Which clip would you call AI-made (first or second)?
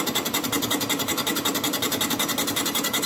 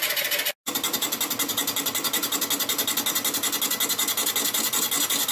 first